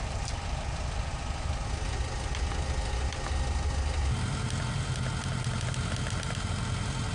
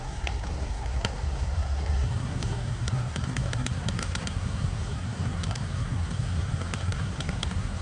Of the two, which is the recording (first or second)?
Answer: first